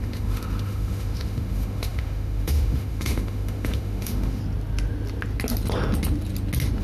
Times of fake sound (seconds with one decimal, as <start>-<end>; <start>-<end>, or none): 0.0-4.4